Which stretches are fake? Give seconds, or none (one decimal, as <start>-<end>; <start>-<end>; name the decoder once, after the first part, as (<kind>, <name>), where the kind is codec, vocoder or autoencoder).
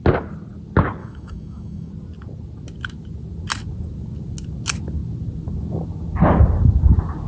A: 1.0-1.9 (autoencoder, DAC-VAE)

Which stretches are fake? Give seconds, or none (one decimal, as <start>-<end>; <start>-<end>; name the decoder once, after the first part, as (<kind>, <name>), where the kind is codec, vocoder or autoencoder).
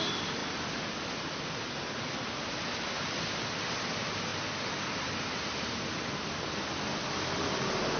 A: none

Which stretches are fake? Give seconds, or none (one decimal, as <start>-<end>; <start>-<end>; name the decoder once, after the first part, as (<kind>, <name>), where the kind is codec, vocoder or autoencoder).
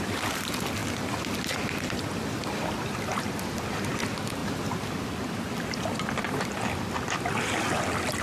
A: 0.0-0.8 (vocoder, BigVGAN v2); 1.8-3.1; 3.9-4.4; 6.3-8.2